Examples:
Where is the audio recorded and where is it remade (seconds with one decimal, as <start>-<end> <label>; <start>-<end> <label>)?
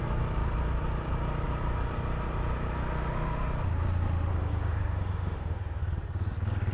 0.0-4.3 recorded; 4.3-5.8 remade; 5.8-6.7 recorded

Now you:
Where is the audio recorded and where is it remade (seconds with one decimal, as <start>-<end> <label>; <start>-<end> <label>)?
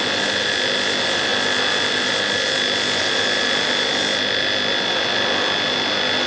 0.0-6.3 recorded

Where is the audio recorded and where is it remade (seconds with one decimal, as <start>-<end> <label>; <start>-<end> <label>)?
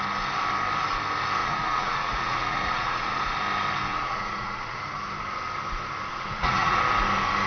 0.0-1.4 recorded; 1.4-3.2 remade; 3.2-3.9 recorded; 3.9-4.8 remade; 4.8-6.1 recorded; 6.1-6.8 remade; 6.8-7.5 recorded